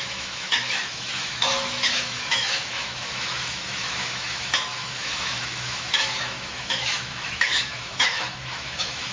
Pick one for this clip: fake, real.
fake